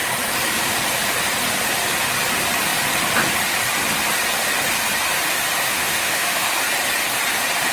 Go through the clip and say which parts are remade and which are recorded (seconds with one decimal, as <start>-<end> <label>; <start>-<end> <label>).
0.0-5.7 recorded; 5.7-6.5 remade; 6.5-7.7 recorded